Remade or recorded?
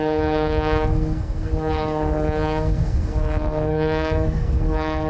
remade